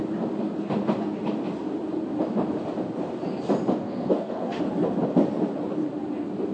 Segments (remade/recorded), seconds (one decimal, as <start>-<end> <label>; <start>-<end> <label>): 0.0-3.8 recorded; 3.8-4.6 remade; 4.6-6.5 recorded

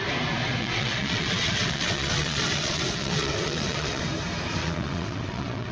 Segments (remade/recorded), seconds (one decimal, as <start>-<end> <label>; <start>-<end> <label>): 0.0-0.6 recorded; 0.6-4.0 remade; 4.0-4.6 recorded; 4.6-5.7 remade

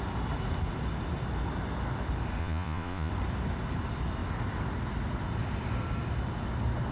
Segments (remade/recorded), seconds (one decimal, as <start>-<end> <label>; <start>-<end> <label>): 0.0-2.4 recorded; 2.4-3.1 remade; 3.1-6.9 recorded